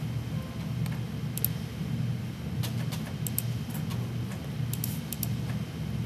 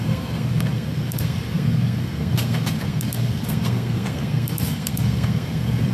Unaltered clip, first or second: first